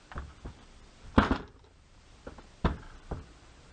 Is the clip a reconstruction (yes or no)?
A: yes